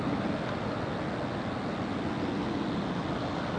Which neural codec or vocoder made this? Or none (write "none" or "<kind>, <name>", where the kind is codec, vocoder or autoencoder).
none